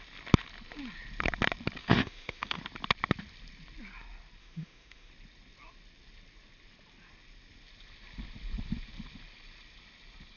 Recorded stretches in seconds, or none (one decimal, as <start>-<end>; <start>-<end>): 0.0-1.8; 2.6-4.4; 5.1-10.4